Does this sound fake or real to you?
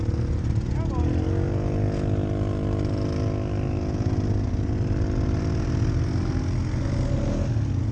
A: real